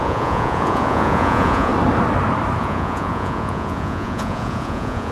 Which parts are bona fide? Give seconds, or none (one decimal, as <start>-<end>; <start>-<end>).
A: 1.7-2.6